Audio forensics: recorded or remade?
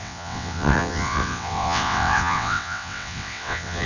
remade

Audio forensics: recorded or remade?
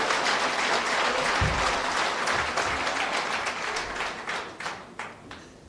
recorded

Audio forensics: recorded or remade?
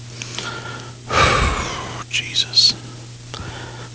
recorded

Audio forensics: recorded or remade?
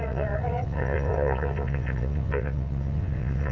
remade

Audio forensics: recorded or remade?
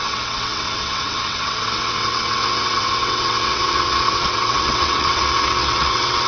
remade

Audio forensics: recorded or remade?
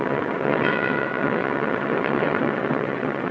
remade